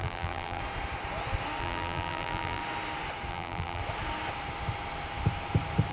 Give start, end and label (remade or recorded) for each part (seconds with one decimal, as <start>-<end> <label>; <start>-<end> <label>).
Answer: 0.0-0.6 remade; 0.6-1.6 recorded; 1.6-2.6 remade; 2.6-3.3 recorded; 3.3-3.8 remade; 3.8-5.9 recorded